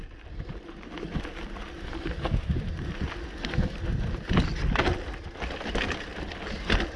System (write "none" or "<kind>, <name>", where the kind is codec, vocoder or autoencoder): none